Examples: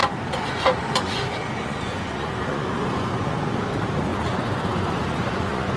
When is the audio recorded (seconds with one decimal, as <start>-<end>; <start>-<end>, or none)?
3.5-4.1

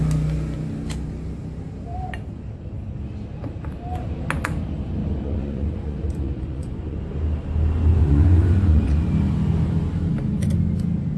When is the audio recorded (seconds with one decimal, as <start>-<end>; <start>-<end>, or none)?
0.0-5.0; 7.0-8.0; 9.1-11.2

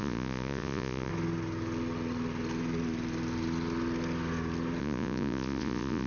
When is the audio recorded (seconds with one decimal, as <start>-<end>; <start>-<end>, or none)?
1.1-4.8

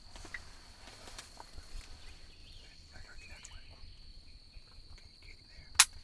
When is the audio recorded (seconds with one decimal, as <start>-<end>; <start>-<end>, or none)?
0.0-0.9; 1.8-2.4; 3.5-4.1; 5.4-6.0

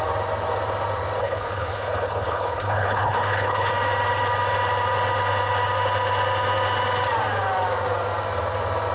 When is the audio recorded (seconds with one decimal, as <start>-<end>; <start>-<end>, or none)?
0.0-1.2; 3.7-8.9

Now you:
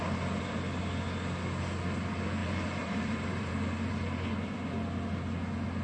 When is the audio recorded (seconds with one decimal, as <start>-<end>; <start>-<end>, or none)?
0.0-2.4; 3.5-5.8